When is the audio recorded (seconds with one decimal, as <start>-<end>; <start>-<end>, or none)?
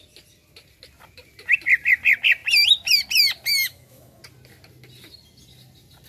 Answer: 0.0-3.5; 4.2-6.1